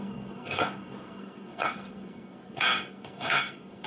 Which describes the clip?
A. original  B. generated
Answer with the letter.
B